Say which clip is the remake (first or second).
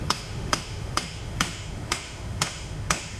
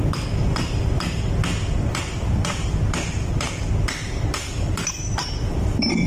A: first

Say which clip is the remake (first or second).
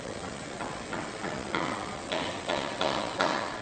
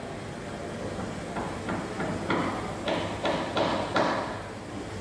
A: first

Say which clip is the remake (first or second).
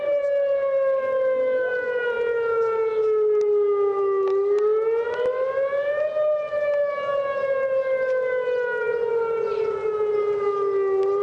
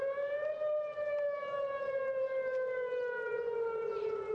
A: second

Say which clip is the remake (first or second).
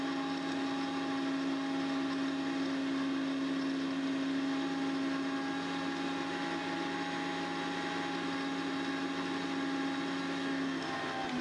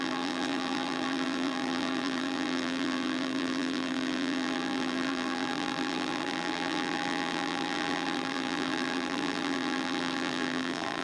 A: second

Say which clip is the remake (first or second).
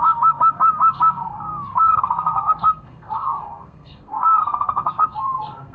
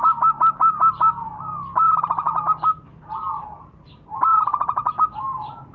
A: first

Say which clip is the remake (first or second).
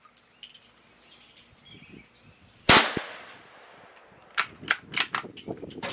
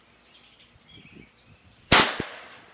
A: second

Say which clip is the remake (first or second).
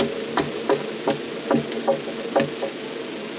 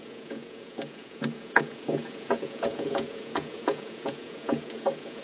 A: second